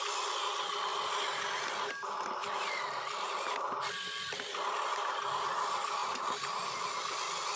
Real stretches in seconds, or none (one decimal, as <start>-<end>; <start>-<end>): 0.0-0.9; 5.5-6.0; 7.0-7.6